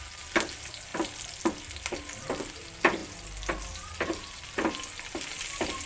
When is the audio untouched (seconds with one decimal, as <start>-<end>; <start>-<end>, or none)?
0.0-5.9